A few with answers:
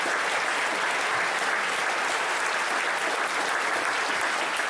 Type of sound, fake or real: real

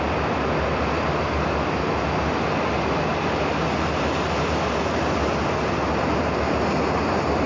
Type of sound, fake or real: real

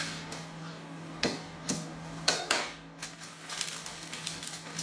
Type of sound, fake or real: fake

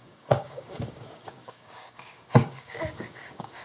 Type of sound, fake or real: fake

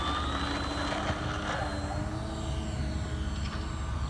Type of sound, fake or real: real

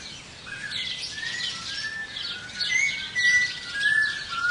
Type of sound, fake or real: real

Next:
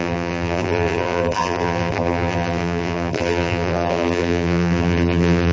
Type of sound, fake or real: fake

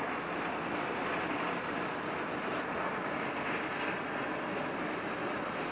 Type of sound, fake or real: real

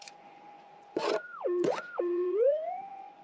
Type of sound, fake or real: fake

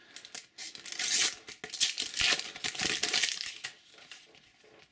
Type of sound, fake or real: real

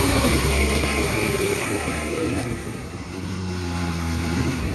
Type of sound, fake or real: fake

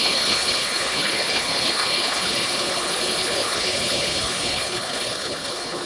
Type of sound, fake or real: fake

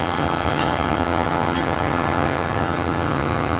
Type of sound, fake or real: fake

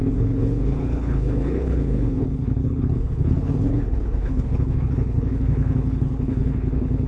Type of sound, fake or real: fake